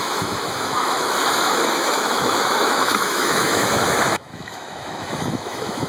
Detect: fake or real fake